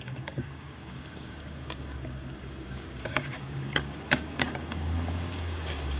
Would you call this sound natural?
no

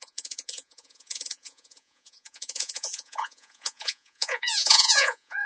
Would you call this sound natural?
no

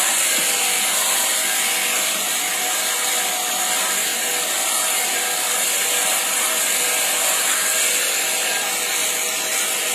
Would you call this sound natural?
yes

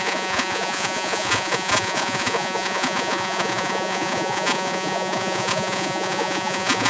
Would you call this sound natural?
no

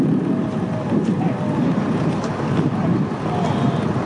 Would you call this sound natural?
yes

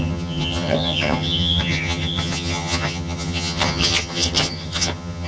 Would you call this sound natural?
no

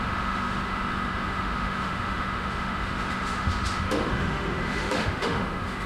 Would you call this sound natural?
no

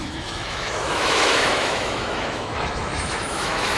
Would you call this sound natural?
no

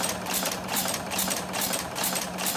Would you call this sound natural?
no